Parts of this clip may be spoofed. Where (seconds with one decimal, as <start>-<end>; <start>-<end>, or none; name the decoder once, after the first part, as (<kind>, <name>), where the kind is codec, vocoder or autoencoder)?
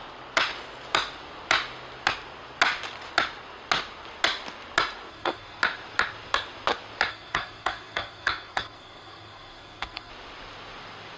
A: 5.1-5.6 (codec, SNAC); 7.1-10.1